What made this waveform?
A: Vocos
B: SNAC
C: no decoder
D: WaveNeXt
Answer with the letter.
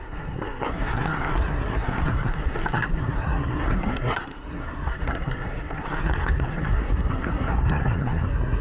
B